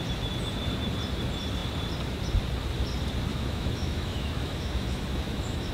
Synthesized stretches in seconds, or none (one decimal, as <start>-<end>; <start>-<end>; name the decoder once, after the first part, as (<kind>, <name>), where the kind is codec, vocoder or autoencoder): 3.3-5.7 (autoencoder, DAC-VAE)